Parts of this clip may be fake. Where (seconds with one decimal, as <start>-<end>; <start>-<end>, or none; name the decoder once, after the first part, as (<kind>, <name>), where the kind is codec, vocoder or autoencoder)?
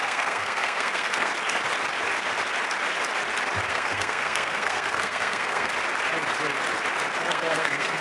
0.0-1.3 (codec, SNAC); 3.7-5.7; 7.2-8.0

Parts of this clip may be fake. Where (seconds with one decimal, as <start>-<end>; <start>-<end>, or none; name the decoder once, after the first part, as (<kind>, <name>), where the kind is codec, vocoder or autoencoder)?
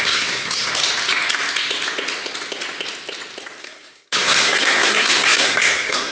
0.0-0.7 (codec, SNAC); 3.6-6.1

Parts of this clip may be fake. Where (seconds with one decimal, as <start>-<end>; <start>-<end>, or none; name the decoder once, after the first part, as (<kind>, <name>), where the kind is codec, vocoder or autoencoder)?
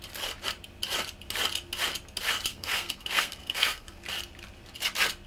2.5-4.0 (codec, SNAC)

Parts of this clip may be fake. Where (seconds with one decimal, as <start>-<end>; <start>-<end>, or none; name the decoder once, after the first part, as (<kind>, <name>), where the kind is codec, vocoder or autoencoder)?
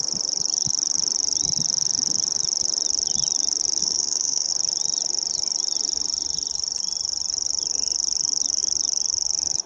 3.8-4.5 (codec, SNAC)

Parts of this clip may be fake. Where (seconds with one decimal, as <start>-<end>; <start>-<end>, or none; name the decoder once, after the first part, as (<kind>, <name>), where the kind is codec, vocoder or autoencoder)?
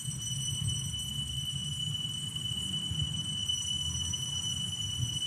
none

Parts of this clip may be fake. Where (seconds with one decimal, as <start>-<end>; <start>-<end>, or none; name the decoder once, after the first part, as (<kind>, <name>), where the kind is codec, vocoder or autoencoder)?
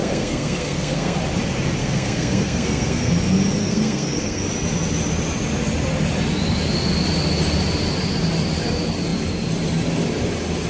0.0-1.2 (codec, SNAC); 1.8-3.1; 3.6-4.4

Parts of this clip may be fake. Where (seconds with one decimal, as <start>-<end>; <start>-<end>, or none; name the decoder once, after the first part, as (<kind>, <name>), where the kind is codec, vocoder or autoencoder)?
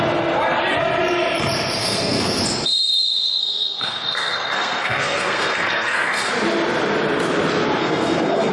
1.8-2.4 (codec, SNAC); 3.4-6.3; 7.8-8.5